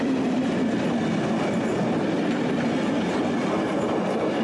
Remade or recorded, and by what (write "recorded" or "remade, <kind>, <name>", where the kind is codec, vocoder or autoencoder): recorded